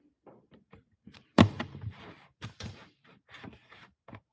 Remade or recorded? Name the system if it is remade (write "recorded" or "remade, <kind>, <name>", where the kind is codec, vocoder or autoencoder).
remade, vocoder, BigVGAN v2